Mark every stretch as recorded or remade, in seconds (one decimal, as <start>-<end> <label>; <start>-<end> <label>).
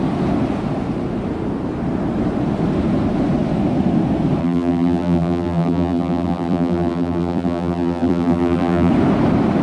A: 0.0-4.4 recorded; 4.4-8.9 remade; 8.9-9.6 recorded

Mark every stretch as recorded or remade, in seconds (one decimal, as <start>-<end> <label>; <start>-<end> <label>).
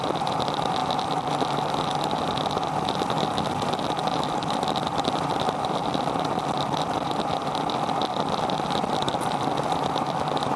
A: 0.0-4.0 recorded; 4.0-9.1 remade; 9.1-10.6 recorded